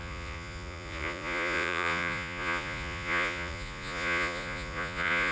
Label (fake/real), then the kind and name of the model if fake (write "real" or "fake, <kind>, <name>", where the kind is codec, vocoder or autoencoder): fake, vocoder, Vocos